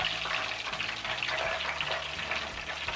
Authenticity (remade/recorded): recorded